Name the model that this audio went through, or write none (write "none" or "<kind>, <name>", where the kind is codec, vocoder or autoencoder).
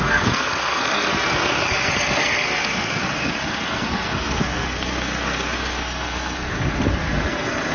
codec, SNAC